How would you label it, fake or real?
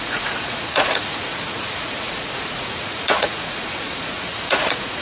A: fake